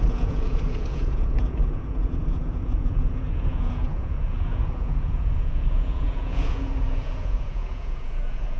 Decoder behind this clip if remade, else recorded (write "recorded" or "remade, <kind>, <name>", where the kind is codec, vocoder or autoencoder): remade, vocoder, Vocos